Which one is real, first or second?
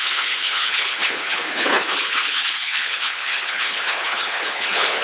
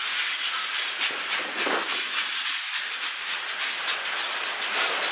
second